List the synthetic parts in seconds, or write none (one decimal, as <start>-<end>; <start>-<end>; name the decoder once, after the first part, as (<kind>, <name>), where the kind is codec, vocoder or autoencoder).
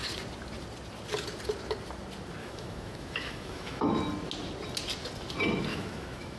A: 2.4-3.9 (autoencoder, DAC-VAE); 5.7-6.4